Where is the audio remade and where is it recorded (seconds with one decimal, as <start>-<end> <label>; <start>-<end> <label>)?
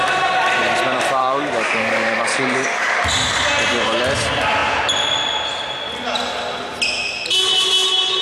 0.0-1.2 recorded; 1.2-3.0 remade; 3.0-8.2 recorded